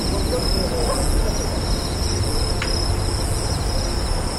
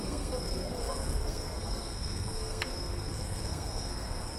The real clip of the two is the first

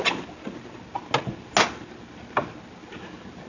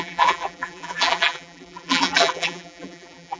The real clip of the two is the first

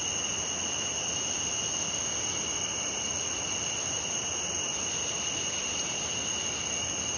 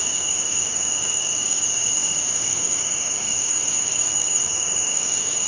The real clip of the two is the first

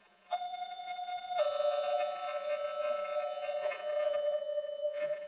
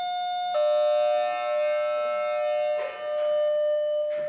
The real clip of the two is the second